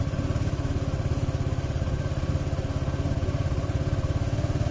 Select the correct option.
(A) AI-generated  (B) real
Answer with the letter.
B